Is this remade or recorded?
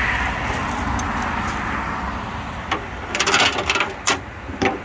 recorded